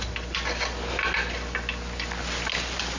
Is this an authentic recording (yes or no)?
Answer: yes